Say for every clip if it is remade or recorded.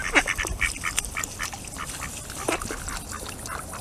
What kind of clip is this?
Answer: recorded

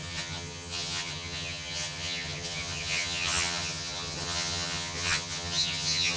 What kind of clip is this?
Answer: remade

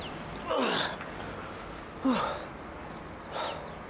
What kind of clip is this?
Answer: recorded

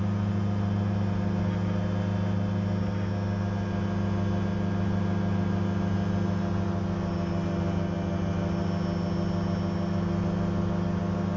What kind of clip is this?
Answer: recorded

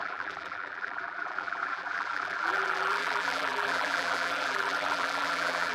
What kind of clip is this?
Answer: remade